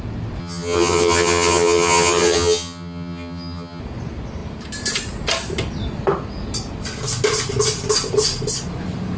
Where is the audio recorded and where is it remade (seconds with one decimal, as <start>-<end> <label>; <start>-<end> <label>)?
0.0-0.4 recorded; 0.4-3.8 remade; 3.8-9.2 recorded